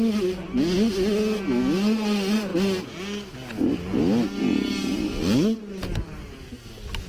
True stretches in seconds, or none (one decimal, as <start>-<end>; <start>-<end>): 0.0-7.1